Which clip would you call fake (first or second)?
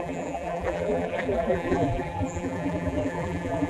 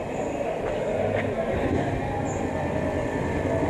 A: first